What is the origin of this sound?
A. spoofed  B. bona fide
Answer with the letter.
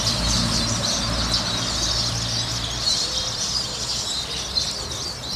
B